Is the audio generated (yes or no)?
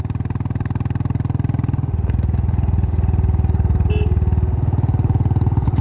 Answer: no